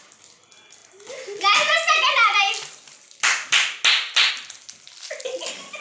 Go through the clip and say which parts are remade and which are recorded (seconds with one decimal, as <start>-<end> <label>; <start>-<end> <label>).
0.0-5.8 recorded